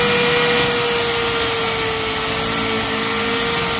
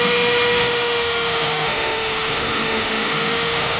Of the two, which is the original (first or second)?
first